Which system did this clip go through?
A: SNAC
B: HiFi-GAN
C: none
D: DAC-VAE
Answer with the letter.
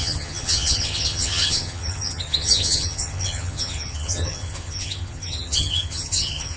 B